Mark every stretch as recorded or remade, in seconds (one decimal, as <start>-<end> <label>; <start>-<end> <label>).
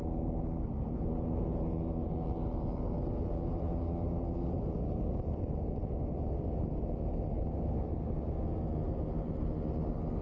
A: 0.0-10.2 recorded